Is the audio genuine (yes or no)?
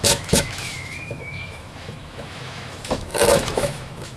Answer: no